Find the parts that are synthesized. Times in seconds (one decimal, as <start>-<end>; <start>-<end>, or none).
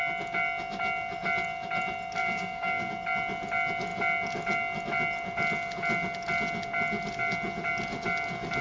2.2-2.9